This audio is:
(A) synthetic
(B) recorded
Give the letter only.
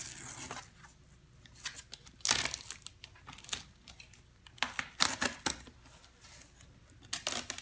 B